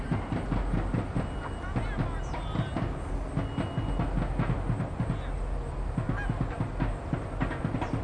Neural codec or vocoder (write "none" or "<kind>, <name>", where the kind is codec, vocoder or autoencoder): none